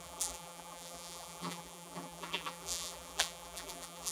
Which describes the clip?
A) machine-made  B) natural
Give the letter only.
A